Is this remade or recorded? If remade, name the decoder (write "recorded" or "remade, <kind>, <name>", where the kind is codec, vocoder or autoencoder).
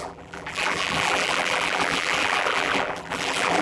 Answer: remade, vocoder, BigVGAN v2